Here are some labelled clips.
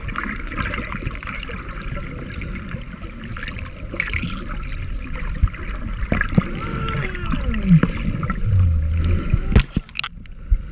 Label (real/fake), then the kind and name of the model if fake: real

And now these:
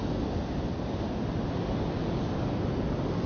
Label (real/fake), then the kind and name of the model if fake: real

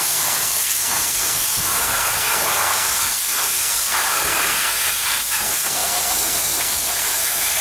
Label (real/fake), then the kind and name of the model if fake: fake, codec, SNAC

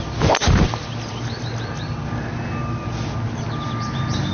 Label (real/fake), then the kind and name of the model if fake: real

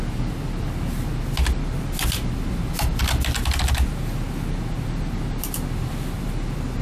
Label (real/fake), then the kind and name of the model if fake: real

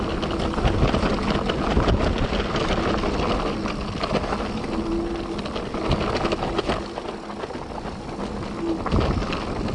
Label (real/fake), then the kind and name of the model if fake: real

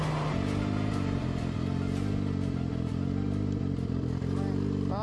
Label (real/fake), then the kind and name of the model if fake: real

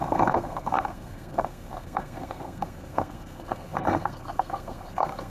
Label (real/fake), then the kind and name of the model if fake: fake, codec, SNAC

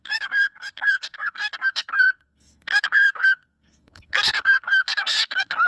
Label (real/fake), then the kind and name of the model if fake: fake, codec, SNAC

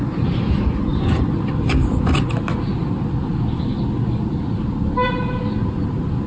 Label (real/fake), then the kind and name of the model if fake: real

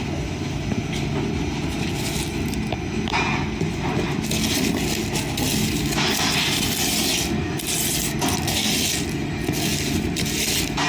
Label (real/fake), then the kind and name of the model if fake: real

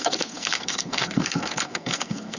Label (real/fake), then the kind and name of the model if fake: fake, codec, SNAC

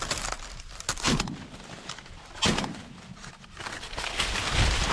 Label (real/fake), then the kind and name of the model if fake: real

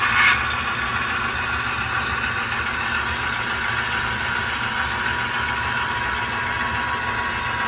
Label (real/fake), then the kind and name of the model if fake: real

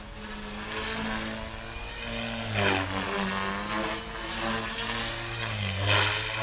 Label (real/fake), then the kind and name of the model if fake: real